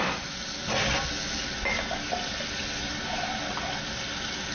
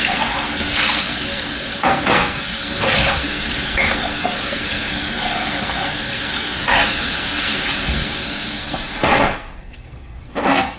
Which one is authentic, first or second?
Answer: first